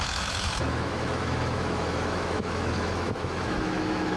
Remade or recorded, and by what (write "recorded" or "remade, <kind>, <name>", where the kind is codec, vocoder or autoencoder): remade, autoencoder, DAC-VAE